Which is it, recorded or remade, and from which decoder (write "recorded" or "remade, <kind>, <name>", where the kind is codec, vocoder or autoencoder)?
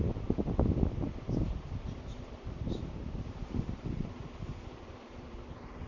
recorded